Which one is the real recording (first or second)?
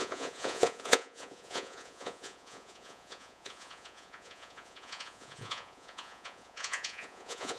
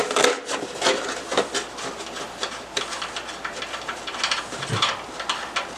second